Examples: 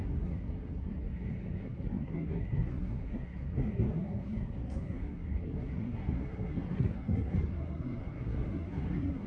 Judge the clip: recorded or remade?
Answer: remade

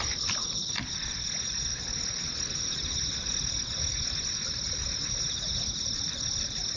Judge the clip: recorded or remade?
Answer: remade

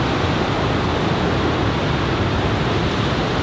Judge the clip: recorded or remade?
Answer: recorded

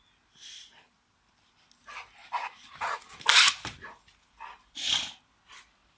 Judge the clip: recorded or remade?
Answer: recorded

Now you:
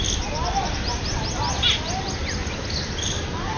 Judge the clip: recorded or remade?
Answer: recorded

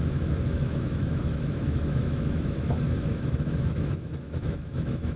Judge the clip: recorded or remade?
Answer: remade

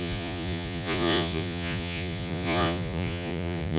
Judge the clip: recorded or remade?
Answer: remade